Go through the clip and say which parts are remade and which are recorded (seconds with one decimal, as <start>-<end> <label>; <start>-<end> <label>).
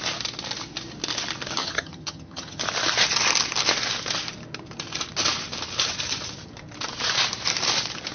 0.0-1.6 recorded; 1.6-2.6 remade; 2.6-8.1 recorded